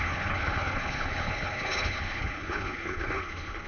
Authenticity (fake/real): fake